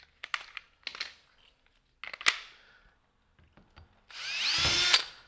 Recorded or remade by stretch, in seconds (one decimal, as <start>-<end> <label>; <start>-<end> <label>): 0.0-5.3 recorded